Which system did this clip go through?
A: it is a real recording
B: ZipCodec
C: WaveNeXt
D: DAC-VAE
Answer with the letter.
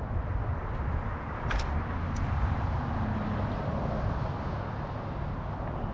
A